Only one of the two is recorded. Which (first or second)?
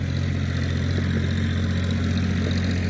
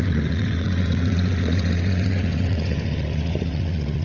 first